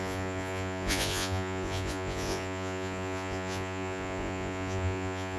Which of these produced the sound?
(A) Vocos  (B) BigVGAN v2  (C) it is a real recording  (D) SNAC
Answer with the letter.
A